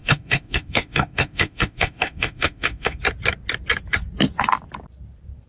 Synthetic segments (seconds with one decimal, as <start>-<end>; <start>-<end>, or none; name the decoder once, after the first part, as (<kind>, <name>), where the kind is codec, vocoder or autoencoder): 0.0-3.0 (autoencoder, DAC-VAE)